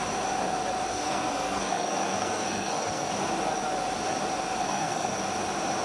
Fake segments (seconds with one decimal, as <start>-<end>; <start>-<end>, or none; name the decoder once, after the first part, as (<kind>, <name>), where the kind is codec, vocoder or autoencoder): 0.9-3.1 (codec, SNAC); 4.6-5.2